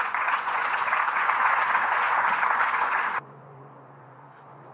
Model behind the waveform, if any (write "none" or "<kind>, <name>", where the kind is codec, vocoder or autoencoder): vocoder, Vocos